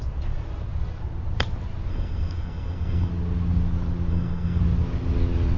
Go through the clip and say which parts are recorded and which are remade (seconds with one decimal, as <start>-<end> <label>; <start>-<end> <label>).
0.0-1.9 recorded; 1.9-3.1 remade; 3.1-4.1 recorded; 4.1-4.6 remade; 4.6-5.6 recorded